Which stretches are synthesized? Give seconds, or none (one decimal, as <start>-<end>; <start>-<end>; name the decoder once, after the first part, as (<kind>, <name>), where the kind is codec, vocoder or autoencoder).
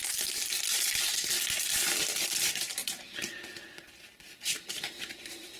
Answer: 0.0-2.8 (vocoder, BigVGAN v2); 4.2-5.6